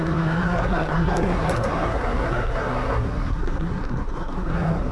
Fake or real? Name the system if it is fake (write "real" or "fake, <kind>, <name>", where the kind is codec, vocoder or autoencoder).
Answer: fake, codec, SNAC